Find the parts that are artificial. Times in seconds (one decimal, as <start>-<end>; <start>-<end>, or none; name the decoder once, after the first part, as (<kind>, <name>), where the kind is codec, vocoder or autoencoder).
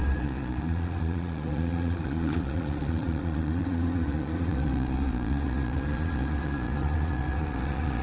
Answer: 0.0-8.0 (vocoder, Vocos)